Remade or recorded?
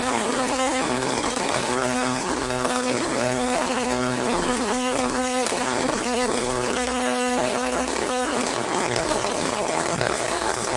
remade